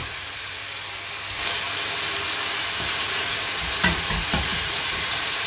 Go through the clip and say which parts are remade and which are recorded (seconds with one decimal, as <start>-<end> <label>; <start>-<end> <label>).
0.0-0.6 remade; 0.6-2.9 recorded; 2.9-5.5 remade